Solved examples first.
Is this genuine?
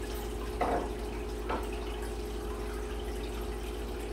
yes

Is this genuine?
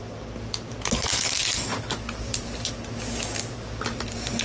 yes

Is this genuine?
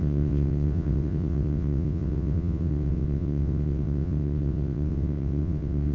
no